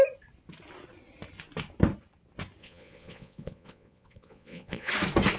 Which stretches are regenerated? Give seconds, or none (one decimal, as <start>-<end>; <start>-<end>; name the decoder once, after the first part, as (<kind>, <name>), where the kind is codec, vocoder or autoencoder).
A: 2.6-4.9 (vocoder, Vocos)